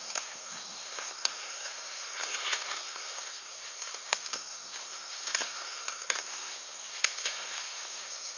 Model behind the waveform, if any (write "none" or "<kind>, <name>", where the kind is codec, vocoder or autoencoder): codec, SNAC